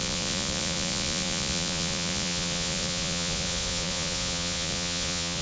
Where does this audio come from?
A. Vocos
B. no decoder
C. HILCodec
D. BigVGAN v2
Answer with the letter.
A